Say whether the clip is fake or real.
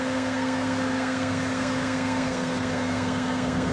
fake